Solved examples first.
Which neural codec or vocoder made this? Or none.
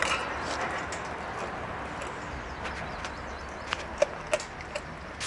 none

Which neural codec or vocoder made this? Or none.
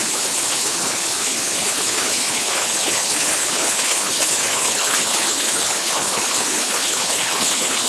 codec, HILCodec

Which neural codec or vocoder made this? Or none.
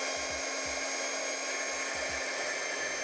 none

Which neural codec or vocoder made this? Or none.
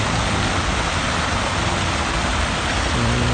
none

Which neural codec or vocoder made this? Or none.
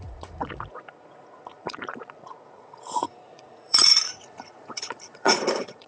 vocoder, Vocos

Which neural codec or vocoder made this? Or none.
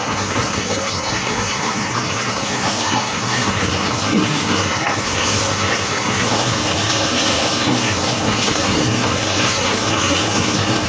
codec, SNAC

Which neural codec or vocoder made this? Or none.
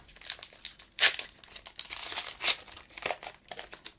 none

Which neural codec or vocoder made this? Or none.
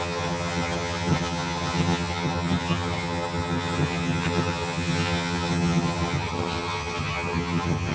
vocoder, HiFi-GAN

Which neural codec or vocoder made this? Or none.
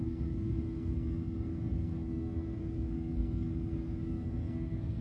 codec, SNAC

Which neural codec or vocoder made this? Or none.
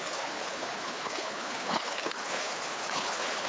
codec, HILCodec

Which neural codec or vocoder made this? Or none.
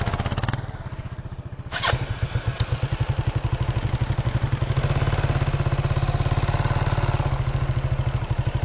none